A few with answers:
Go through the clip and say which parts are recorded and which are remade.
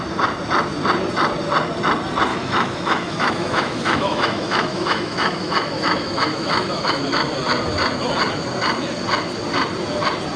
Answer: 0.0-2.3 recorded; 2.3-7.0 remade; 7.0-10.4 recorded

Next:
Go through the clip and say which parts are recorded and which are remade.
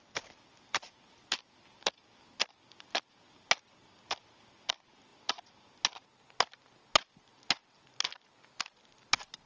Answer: 0.0-9.5 recorded